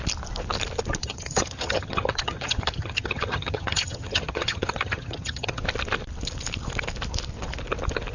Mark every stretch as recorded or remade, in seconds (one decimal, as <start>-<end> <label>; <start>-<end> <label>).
0.0-1.0 recorded; 1.0-5.6 remade; 5.6-8.1 recorded